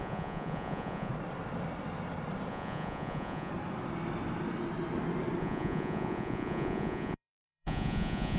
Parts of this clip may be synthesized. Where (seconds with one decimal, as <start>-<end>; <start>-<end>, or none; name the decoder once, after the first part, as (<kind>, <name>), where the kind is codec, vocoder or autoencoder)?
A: 0.0-1.1 (vocoder, Vocos); 2.5-3.5; 5.4-8.4